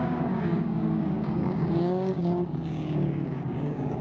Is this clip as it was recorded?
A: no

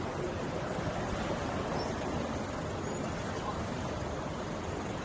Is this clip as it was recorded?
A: yes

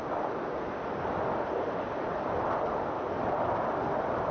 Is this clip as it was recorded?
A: yes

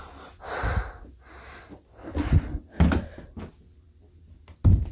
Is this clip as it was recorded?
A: yes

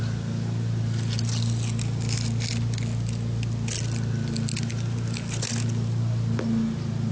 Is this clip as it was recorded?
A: yes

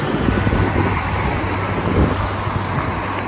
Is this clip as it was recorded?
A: yes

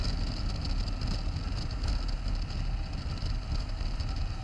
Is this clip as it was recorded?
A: yes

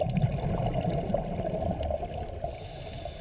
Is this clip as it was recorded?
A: yes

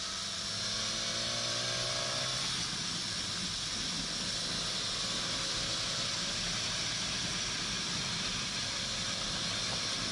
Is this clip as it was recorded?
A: yes